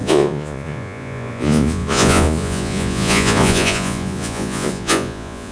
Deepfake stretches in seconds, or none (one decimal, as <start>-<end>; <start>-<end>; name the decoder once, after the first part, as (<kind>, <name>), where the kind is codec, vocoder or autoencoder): 0.0-5.5 (vocoder, Vocos)